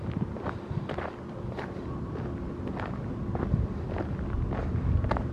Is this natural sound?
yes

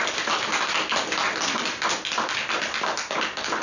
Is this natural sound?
yes